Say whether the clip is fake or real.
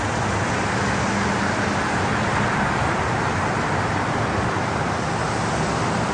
real